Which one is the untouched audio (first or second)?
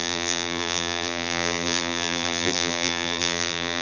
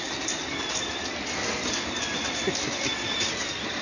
second